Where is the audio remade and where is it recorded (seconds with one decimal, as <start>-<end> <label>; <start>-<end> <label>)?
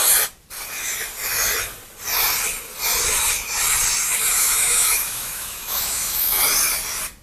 0.0-4.3 recorded; 4.3-6.4 remade; 6.4-7.2 recorded